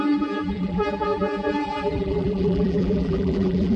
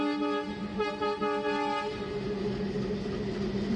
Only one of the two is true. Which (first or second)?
second